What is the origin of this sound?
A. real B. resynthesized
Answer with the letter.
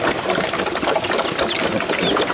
A